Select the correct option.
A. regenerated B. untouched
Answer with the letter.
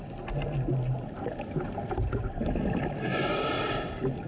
B